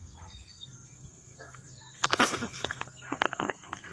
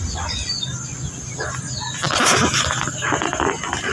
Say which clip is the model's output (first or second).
first